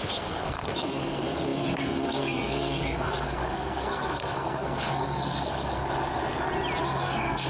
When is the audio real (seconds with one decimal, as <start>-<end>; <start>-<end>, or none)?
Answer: 5.8-6.8